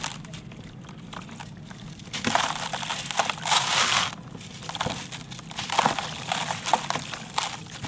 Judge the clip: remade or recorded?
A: recorded